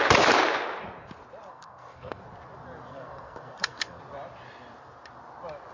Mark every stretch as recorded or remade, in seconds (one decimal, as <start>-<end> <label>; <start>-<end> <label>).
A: 0.0-1.5 recorded; 1.5-2.2 remade; 2.2-2.9 recorded; 2.9-4.0 remade; 4.0-5.7 recorded